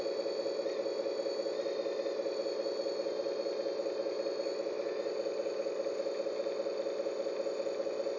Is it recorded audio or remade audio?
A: recorded